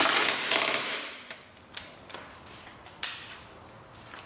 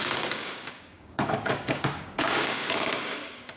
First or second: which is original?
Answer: first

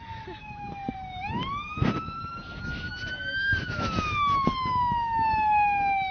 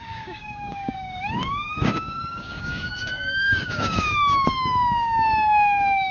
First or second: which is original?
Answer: first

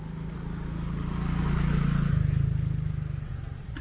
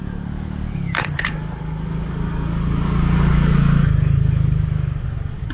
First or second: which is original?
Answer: first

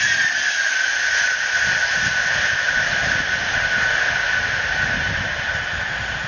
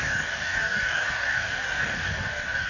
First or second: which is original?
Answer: first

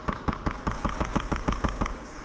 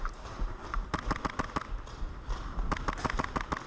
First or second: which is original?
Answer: second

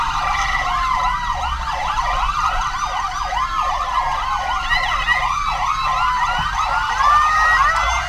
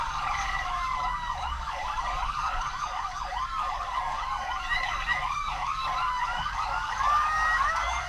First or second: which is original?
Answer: first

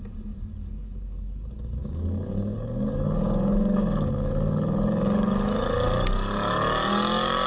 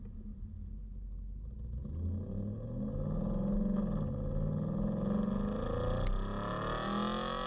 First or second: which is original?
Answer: second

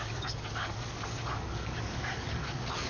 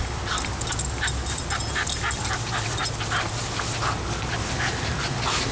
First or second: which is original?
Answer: second